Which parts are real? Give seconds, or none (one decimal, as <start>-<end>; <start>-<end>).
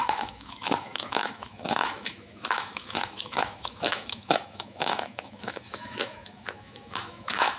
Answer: none